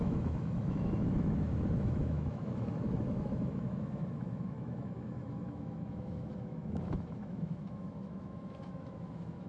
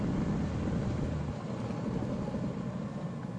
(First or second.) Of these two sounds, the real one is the second